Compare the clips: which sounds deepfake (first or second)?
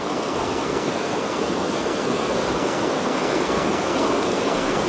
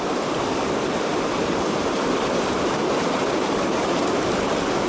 first